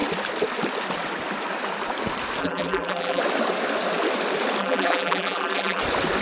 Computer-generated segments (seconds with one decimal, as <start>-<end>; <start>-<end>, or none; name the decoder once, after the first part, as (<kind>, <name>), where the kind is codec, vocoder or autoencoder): 2.4-3.2 (vocoder, BigVGAN v2); 4.6-5.8